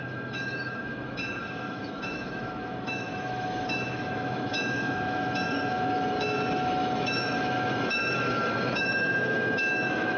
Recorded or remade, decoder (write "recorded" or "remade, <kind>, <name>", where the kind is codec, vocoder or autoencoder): remade, autoencoder, DAC-VAE